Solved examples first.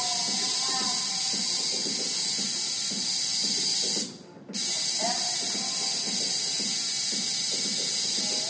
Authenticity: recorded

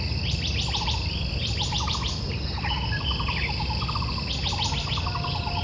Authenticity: recorded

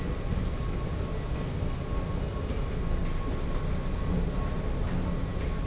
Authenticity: recorded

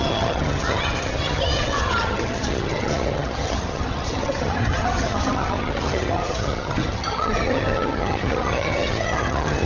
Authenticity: remade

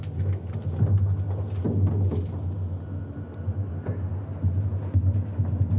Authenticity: recorded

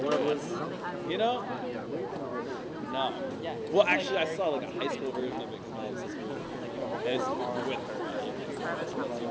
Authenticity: recorded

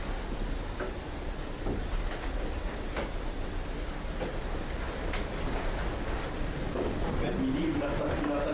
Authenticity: recorded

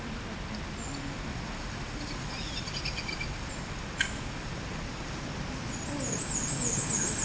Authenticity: recorded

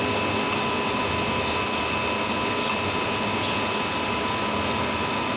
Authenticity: recorded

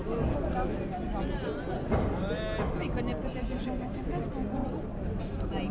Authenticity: recorded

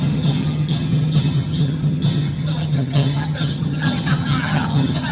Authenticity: remade